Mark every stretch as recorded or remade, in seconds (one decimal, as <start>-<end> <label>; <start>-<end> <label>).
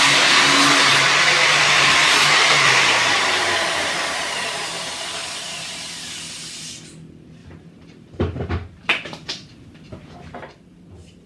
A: 0.0-0.9 recorded; 0.9-5.8 remade; 5.8-7.4 recorded; 7.4-8.5 remade; 8.5-11.3 recorded